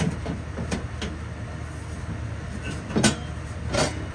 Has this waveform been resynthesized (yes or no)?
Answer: no